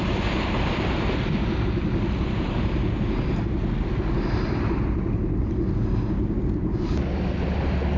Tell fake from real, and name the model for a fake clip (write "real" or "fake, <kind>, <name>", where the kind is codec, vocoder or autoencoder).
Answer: real